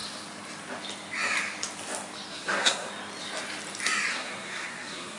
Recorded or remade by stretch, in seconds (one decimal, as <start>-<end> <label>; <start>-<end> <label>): 0.0-2.3 recorded; 2.3-2.9 remade; 2.9-4.1 recorded; 4.1-5.2 remade